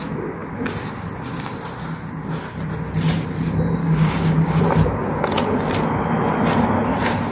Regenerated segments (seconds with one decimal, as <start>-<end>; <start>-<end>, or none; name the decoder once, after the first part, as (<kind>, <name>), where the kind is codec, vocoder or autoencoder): 3.8-4.6 (codec, DAC)